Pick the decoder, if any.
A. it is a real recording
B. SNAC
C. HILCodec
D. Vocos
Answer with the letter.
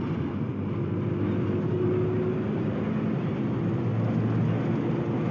A